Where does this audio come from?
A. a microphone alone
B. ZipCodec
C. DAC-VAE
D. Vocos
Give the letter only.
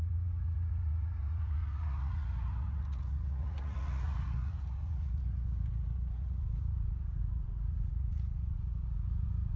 D